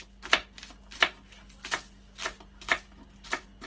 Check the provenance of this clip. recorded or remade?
recorded